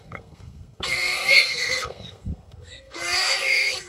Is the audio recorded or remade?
remade